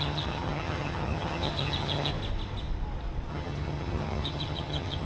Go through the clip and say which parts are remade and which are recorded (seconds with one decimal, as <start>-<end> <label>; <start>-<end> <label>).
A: 0.0-2.1 remade; 2.1-3.3 recorded; 3.3-5.1 remade